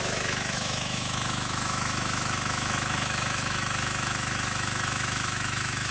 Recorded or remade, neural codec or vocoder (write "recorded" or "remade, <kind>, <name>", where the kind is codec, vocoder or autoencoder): remade, autoencoder, DAC-VAE